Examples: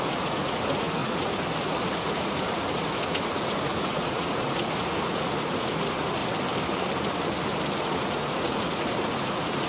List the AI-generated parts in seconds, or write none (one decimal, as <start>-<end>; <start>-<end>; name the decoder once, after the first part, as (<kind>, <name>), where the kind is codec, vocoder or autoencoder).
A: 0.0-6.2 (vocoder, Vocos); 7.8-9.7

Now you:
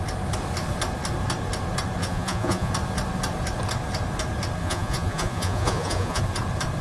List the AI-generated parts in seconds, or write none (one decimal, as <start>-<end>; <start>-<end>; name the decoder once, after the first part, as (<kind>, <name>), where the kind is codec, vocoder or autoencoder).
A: 2.0-2.7 (vocoder, Vocos); 4.6-6.2

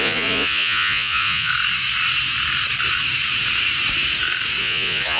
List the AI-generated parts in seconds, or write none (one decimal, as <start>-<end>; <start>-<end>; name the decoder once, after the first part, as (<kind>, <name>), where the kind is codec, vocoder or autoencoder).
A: 0.0-1.5 (vocoder, Vocos); 4.6-5.2

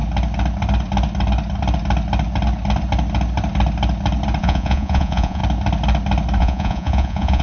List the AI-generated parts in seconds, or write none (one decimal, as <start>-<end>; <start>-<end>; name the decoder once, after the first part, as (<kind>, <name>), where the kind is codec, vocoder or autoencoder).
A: 4.4-5.4 (vocoder, Vocos); 6.4-7.4